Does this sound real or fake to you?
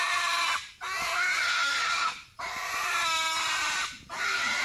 real